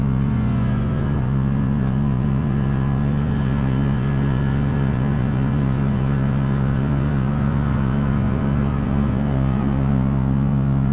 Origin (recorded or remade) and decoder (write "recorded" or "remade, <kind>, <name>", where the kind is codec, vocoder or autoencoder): remade, vocoder, Vocos